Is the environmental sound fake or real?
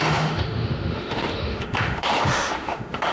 fake